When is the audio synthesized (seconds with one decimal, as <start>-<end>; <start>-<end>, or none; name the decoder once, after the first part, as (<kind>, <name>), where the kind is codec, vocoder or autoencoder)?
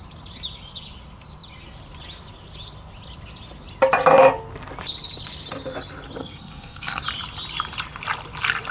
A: 6.2-7.0 (codec, SNAC)